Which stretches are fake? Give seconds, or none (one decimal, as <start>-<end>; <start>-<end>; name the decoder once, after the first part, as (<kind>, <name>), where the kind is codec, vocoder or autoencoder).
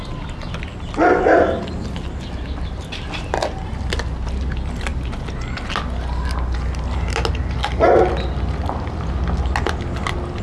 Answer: none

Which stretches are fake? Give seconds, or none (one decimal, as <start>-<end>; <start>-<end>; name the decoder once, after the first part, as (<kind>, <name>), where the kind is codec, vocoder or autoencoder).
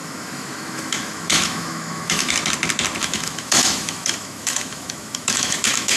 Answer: 0.0-2.3 (autoencoder, DAC-VAE); 3.0-6.0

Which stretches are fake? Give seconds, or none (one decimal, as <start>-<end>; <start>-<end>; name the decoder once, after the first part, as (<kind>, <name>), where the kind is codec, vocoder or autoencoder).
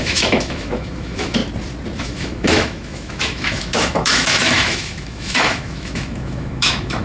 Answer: 0.0-1.4 (autoencoder, DAC-VAE); 2.0-7.0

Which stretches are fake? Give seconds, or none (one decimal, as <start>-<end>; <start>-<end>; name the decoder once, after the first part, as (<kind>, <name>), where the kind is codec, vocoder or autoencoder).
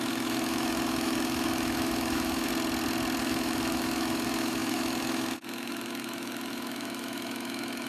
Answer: 0.0-2.5 (autoencoder, DAC-VAE); 3.2-7.9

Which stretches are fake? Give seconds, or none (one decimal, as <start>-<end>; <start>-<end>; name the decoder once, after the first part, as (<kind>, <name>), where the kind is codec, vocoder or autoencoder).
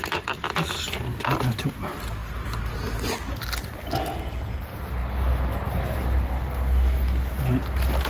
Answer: none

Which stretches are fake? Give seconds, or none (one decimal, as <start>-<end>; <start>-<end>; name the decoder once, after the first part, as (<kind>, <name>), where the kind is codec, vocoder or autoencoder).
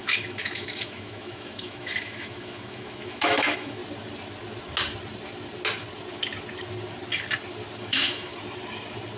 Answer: 0.0-3.8 (autoencoder, DAC-VAE); 7.8-8.3